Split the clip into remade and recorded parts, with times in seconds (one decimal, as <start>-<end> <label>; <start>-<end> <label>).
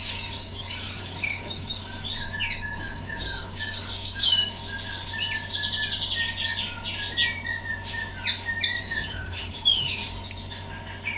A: 0.0-4.6 remade; 4.6-8.8 recorded; 8.8-10.0 remade; 10.0-11.2 recorded